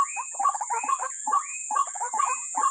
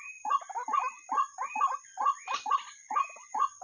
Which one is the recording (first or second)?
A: second